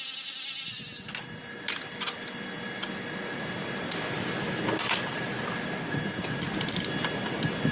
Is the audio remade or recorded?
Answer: recorded